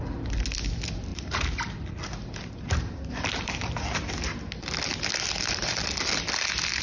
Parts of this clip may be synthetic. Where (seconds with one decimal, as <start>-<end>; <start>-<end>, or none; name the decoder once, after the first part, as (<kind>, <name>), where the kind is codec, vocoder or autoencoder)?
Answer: none